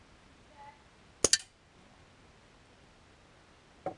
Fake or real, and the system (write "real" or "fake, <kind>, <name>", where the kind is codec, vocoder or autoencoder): real